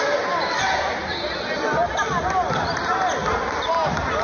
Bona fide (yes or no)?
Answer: yes